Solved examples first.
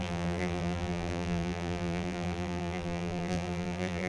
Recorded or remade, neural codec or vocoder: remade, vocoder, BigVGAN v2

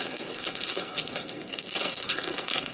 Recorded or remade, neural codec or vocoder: remade, codec, SNAC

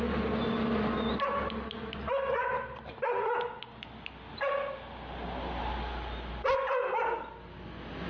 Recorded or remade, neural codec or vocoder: recorded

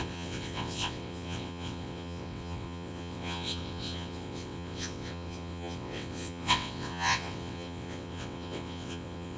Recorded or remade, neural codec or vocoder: remade, vocoder, WaveNeXt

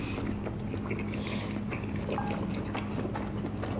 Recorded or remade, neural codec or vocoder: recorded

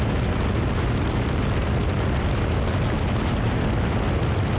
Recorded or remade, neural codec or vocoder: recorded